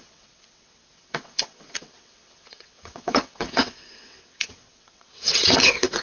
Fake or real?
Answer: fake